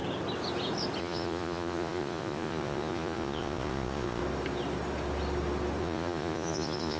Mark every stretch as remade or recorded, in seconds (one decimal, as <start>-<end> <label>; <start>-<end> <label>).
0.0-1.0 recorded; 1.0-4.2 remade; 4.2-5.8 recorded; 5.8-7.0 remade